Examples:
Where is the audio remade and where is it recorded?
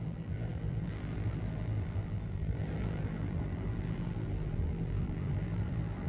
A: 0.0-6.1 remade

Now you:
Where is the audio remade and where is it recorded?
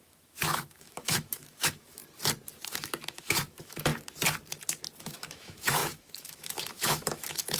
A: 0.0-2.0 remade; 2.0-2.7 recorded; 2.7-3.9 remade; 3.9-5.0 recorded; 5.0-7.6 remade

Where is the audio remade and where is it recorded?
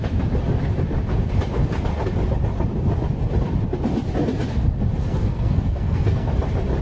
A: 0.0-5.0 recorded; 5.0-6.3 remade; 6.3-6.8 recorded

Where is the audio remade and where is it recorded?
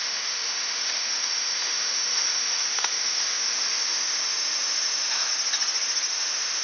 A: 0.0-5.3 remade; 5.3-6.1 recorded; 6.1-6.6 remade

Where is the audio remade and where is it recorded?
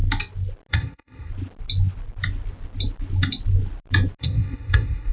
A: 0.0-0.7 recorded; 0.7-1.3 remade; 1.3-4.2 recorded; 4.2-5.1 remade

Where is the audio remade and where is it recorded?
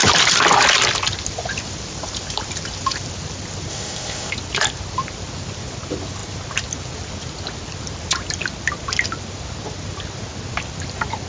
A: 0.0-3.7 recorded; 3.7-4.3 remade; 4.3-11.3 recorded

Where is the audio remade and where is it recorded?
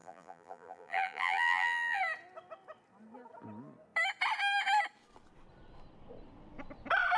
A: 0.0-2.0 remade; 2.0-7.2 recorded